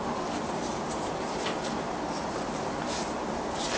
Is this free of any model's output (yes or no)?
yes